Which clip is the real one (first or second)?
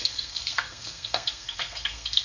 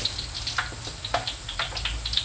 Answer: second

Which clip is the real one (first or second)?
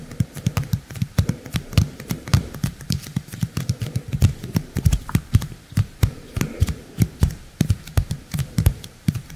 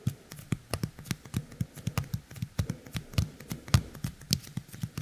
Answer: second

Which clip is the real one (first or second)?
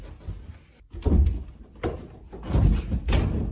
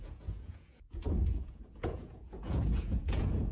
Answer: first